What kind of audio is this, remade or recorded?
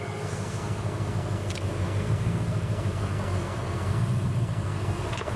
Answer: remade